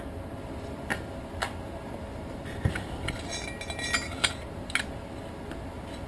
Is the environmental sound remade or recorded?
recorded